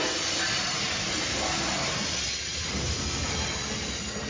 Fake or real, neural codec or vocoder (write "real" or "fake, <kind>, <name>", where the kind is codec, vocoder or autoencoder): real